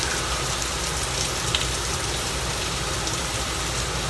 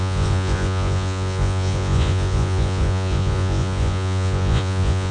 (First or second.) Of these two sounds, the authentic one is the first